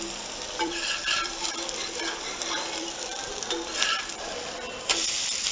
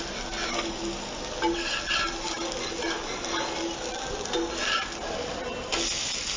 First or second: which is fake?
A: first